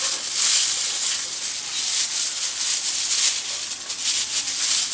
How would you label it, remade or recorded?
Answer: recorded